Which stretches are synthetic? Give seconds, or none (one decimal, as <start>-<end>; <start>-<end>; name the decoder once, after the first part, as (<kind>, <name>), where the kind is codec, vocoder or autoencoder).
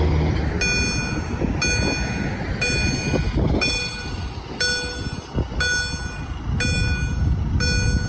none